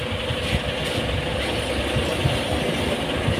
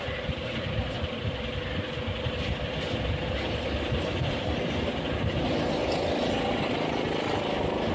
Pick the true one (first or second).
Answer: first